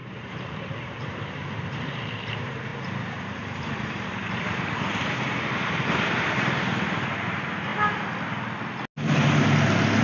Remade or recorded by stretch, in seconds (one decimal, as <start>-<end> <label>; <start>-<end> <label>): 0.0-7.7 remade; 7.7-10.0 recorded